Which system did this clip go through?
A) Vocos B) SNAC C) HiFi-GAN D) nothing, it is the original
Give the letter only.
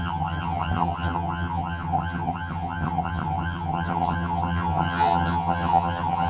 C